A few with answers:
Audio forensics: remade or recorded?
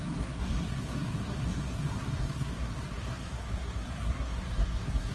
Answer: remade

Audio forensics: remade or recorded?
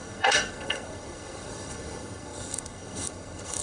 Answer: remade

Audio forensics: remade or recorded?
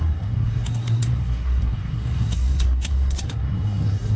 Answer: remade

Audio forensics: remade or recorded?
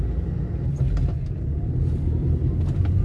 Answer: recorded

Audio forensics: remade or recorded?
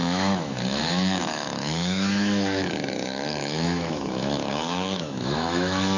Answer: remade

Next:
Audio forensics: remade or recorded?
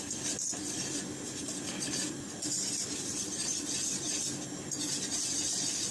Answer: recorded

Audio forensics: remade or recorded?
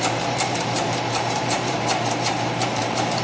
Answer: remade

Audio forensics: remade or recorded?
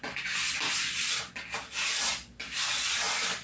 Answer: recorded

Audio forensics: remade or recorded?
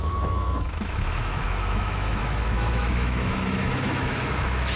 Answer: remade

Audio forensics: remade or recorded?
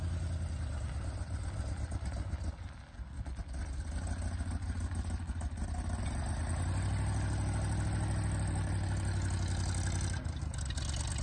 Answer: recorded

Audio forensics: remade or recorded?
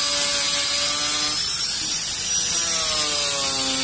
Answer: recorded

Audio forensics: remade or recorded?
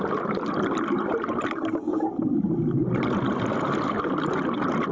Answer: recorded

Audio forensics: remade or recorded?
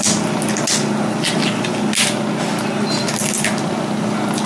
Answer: recorded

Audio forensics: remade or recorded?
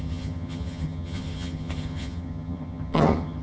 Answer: remade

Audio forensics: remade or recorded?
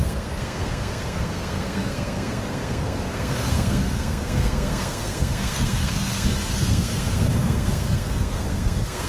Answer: remade